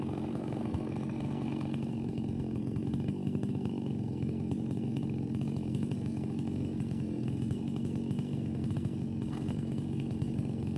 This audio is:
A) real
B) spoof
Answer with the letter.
B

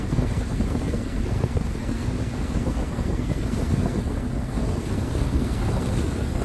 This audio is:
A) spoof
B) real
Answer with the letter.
A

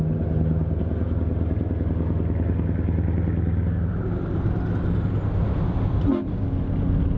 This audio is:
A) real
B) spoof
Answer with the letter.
A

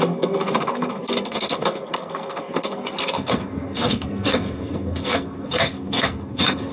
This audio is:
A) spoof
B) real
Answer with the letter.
A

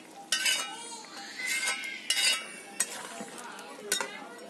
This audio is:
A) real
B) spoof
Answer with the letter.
A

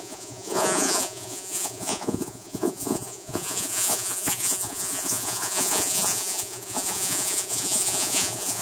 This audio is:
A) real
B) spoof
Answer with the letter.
B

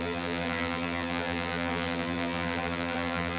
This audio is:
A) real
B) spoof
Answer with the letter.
B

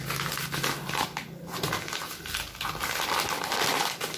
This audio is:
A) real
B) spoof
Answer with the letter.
A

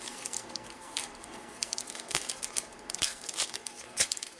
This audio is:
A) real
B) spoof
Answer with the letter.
B